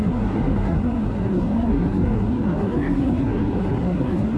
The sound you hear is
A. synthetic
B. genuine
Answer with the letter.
A